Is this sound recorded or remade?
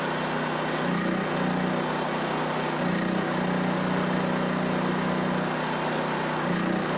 recorded